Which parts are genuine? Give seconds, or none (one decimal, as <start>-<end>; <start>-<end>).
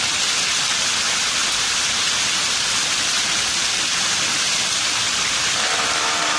0.0-6.4